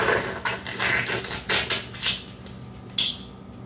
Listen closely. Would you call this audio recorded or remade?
recorded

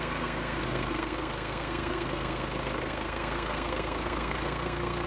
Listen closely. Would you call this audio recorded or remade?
remade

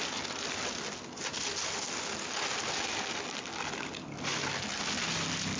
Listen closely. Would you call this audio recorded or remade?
recorded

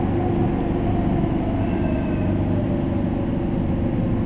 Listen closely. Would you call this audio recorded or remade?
recorded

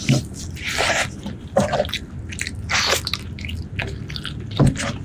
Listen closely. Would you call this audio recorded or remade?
recorded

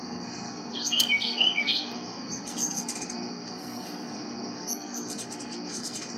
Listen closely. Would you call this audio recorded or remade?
remade